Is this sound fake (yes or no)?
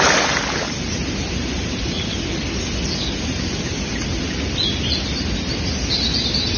no